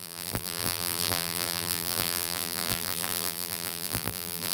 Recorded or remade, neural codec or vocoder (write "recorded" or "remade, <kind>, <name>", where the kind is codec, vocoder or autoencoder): remade, vocoder, BigVGAN v2